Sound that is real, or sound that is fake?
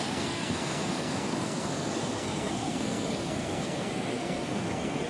fake